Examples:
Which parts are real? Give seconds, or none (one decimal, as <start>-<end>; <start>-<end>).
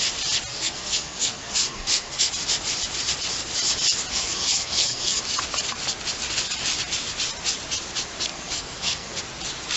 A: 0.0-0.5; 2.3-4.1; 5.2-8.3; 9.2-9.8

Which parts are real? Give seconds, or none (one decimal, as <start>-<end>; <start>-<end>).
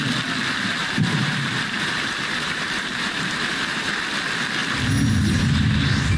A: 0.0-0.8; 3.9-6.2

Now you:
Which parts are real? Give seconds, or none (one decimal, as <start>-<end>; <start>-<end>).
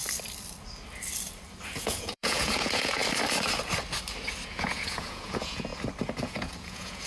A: 0.0-1.8; 3.0-4.5; 5.7-6.2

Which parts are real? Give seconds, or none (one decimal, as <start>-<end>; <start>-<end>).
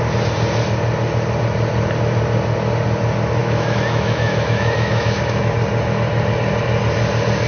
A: 0.0-3.4; 5.5-7.5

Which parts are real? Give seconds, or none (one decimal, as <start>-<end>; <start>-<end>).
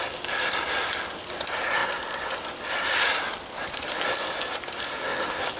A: 0.0-5.6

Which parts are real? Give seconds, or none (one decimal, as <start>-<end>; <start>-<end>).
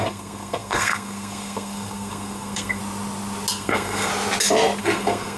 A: 2.8-3.5; 4.1-4.8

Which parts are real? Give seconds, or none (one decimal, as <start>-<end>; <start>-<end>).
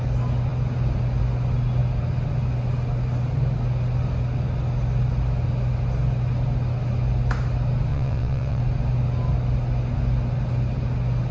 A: 0.0-7.9; 8.6-11.3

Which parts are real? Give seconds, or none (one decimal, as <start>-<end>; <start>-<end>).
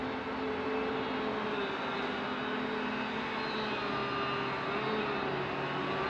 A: 0.0-6.1